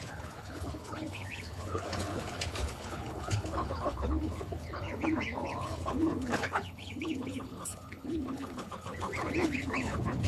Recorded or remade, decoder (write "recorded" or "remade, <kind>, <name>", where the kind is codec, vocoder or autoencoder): remade, codec, HILCodec